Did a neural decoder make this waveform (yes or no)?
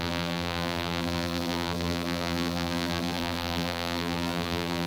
yes